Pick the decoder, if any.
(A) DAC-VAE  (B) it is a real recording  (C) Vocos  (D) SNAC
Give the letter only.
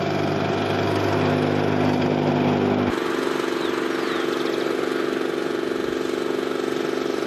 B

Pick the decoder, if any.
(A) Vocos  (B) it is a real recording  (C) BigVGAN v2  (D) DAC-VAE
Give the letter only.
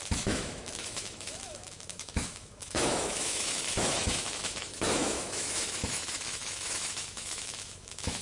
D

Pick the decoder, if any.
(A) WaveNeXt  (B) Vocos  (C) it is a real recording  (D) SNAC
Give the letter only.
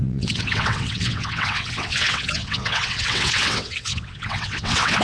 A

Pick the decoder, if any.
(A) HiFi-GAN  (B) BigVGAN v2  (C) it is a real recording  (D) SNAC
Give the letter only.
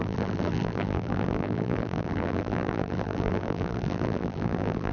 B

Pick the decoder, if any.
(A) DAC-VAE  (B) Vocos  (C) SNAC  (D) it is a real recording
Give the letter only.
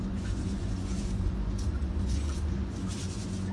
B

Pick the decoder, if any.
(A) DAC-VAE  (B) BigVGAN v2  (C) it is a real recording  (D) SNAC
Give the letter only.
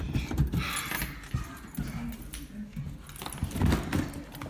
C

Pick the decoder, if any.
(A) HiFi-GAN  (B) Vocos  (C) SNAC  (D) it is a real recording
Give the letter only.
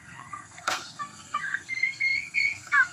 C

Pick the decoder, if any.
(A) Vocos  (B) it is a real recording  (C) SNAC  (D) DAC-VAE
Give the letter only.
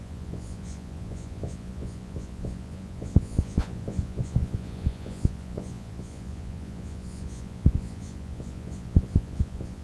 A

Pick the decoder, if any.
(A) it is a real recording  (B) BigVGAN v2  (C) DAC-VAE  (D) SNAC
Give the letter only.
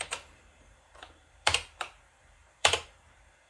B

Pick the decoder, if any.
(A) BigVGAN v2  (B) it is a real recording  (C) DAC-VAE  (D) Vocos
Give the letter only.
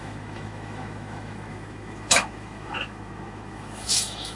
C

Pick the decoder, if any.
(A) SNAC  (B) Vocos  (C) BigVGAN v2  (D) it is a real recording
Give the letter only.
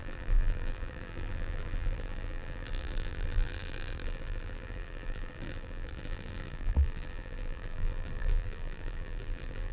C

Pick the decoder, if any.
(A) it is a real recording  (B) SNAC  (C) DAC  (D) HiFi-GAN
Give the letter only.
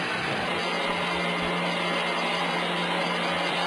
A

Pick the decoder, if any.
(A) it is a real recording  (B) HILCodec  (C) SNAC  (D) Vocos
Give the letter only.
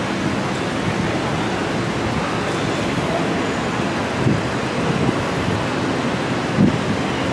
A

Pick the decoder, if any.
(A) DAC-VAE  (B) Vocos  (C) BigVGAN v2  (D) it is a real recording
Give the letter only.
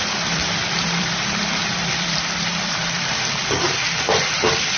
C